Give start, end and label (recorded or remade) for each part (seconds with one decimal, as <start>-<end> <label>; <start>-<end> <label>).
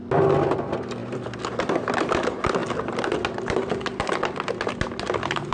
0.0-1.0 recorded; 1.0-1.9 remade; 1.9-5.5 recorded